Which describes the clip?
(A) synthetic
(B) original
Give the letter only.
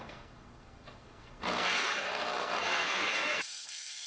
A